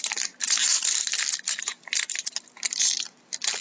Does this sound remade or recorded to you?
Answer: recorded